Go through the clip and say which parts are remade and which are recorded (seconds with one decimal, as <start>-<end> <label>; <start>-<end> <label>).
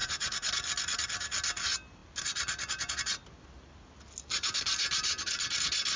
0.0-0.5 remade; 0.5-6.0 recorded